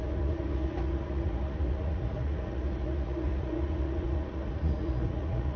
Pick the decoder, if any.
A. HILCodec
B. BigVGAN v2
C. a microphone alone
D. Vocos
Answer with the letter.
D